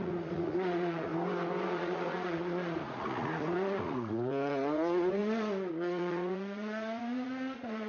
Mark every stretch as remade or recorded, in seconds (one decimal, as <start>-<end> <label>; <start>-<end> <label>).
0.0-1.1 remade; 1.1-1.7 recorded; 1.7-5.2 remade; 5.2-5.7 recorded; 5.7-7.9 remade